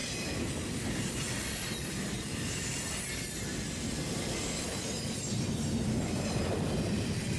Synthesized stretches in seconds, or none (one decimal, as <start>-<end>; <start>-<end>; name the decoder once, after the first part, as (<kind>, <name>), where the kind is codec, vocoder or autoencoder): none